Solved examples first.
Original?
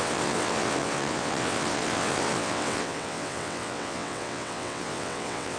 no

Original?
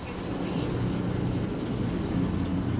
yes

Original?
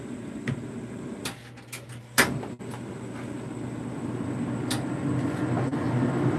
yes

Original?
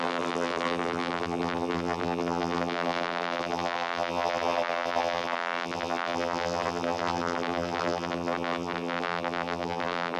no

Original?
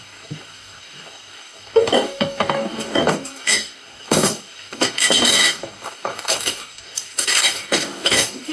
no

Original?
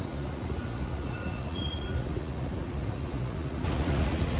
no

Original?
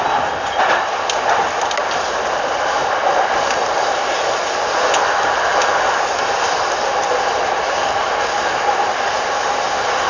yes